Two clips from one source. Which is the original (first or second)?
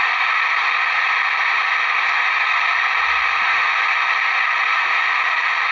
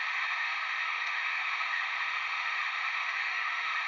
first